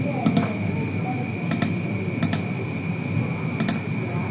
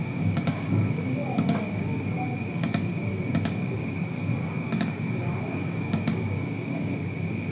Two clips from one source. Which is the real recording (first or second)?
first